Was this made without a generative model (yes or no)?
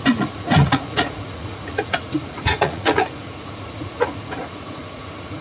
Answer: no